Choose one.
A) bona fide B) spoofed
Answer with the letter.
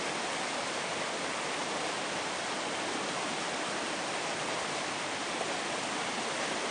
A